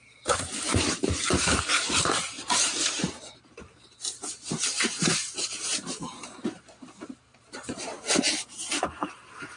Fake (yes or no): yes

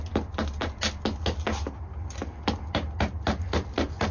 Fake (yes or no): no